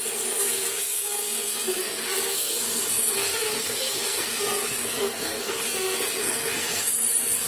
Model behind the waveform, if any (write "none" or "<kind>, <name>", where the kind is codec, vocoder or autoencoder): codec, SNAC